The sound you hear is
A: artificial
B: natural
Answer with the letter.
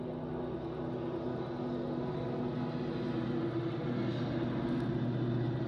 B